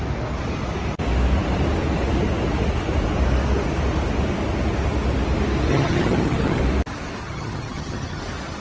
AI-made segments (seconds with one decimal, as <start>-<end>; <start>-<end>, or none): 5.7-6.6; 7.2-8.2